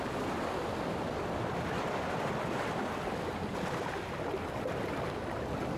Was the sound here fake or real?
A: real